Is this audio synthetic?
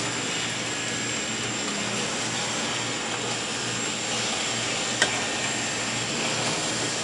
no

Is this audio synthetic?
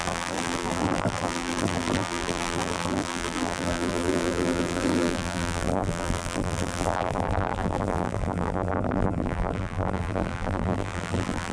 yes